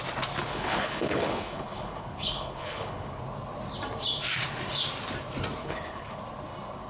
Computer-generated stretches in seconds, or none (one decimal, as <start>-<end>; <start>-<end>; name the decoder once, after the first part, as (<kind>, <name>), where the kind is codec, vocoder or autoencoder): 0.5-3.2 (codec, HILCodec); 5.6-6.2